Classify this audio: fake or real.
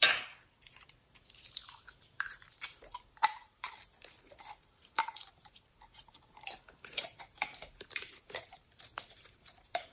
fake